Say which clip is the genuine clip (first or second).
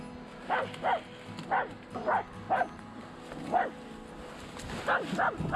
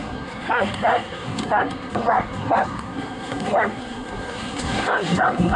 first